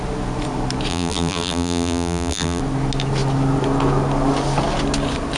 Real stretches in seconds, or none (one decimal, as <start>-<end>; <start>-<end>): 0.0-0.9; 2.6-5.4